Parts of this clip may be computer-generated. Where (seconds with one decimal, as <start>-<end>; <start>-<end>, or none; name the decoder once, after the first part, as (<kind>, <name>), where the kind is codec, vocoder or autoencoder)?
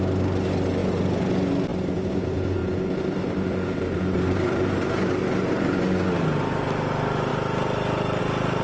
2.6-5.8 (vocoder, BigVGAN v2)